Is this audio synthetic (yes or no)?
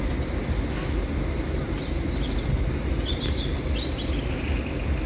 no